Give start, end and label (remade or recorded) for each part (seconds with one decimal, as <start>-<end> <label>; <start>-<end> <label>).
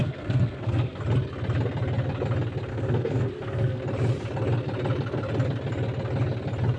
0.0-1.0 remade; 1.0-2.7 recorded; 2.7-3.8 remade; 3.8-6.8 recorded